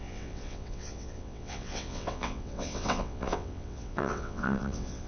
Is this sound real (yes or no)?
no